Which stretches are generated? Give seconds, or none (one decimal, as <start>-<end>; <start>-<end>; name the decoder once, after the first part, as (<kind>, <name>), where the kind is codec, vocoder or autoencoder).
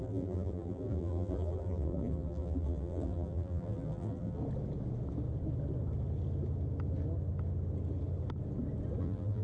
0.0-4.4 (vocoder, BigVGAN v2); 9.0-9.4